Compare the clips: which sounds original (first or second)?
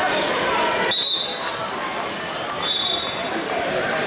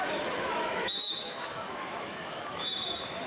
first